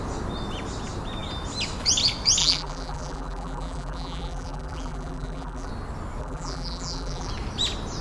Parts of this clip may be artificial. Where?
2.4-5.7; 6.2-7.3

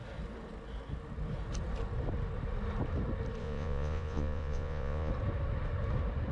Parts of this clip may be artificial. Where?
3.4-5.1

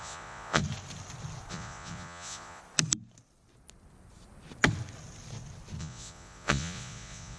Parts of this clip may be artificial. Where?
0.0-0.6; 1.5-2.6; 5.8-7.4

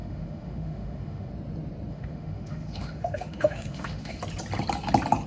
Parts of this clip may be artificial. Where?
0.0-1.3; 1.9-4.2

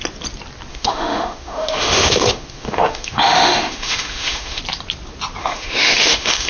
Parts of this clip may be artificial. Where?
0.7-4.6; 5.4-6.5

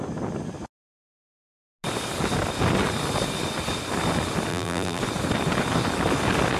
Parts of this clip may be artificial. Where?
4.5-5.0

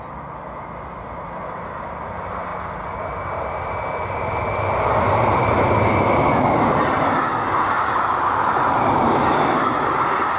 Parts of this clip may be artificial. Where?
none